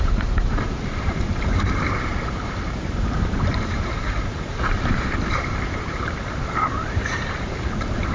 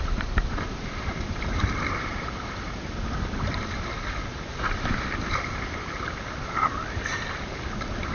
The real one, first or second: second